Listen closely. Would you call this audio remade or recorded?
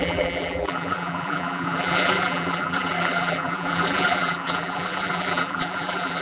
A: remade